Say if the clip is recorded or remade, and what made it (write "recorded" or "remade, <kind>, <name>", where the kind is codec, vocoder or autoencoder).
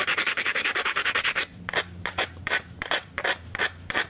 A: remade, vocoder, BigVGAN v2